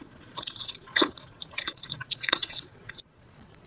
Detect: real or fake fake